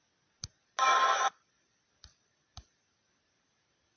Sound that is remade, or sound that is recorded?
recorded